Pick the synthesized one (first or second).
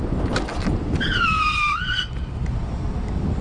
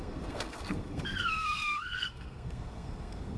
second